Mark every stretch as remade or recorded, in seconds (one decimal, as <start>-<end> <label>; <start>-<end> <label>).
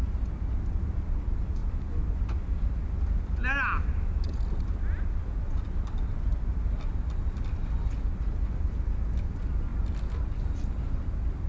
0.0-11.5 recorded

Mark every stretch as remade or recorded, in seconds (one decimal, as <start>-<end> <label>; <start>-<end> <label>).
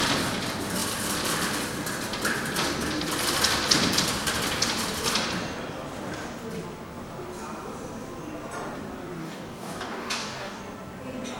0.0-9.2 recorded; 9.2-10.6 remade; 10.6-11.4 recorded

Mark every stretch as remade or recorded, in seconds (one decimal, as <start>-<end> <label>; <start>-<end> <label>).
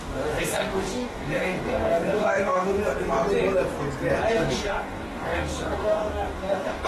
0.0-2.8 remade; 2.8-4.3 recorded; 4.3-6.9 remade